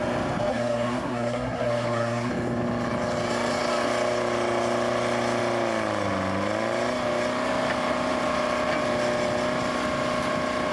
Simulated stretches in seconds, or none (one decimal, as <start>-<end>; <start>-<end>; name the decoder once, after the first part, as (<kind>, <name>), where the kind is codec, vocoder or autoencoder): 0.5-2.3 (codec, SNAC)